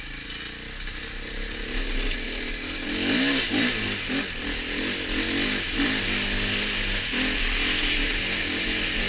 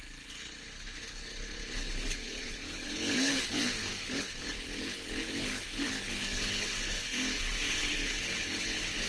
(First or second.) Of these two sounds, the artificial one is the second